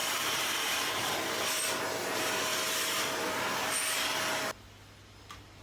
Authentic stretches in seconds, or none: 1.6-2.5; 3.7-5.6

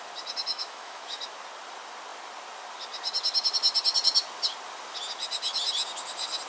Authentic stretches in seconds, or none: 0.0-0.5; 1.2-6.5

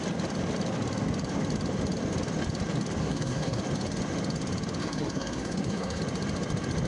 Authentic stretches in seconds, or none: 0.0-3.0; 3.6-4.8; 6.0-6.9

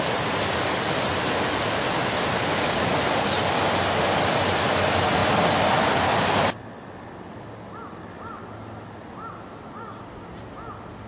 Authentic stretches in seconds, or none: 0.0-11.1

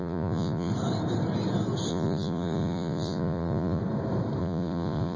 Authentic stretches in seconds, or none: 0.7-1.9; 3.8-4.4

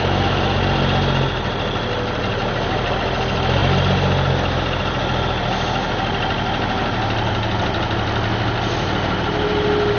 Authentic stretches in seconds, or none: 0.0-10.0

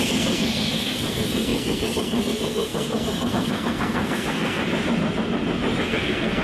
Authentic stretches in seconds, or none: 4.6-5.8

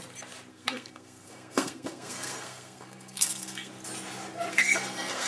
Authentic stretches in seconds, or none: 0.0-0.5; 3.7-4.5